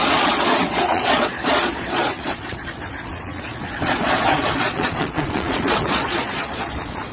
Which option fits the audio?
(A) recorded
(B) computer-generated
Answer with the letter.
B